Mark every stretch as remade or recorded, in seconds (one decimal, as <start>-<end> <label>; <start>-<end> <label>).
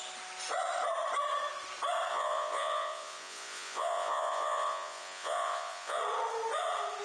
0.0-2.1 recorded; 2.1-6.0 remade; 6.0-7.0 recorded